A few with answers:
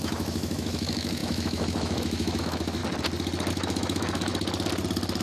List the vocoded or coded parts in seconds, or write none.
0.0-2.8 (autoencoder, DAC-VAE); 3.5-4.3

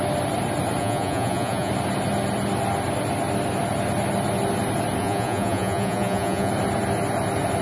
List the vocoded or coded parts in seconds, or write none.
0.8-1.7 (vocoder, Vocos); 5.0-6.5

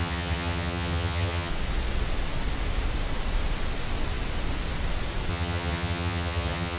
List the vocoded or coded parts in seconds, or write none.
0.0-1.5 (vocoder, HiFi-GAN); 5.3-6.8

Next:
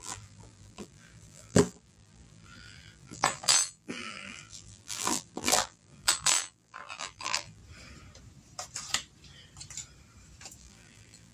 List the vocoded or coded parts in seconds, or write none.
0.0-7.6 (vocoder, BigVGAN v2); 10.6-11.3

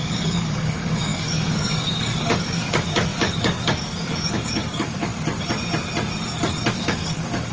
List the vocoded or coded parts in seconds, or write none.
0.0-5.1 (codec, DAC); 6.7-7.5